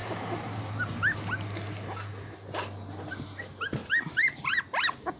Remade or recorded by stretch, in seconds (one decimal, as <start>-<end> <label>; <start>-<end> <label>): 0.0-3.8 recorded; 3.8-4.6 remade; 4.6-5.2 recorded